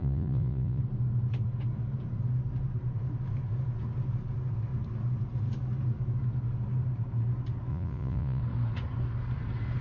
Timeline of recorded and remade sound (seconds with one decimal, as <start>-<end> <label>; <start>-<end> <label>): 0.0-0.8 remade; 0.8-7.7 recorded; 7.7-8.4 remade; 8.4-9.8 recorded